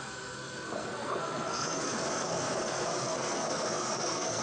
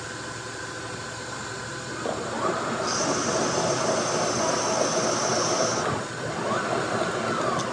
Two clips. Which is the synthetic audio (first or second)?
first